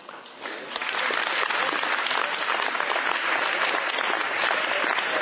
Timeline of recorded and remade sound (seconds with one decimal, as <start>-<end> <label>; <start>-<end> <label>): 0.0-5.2 recorded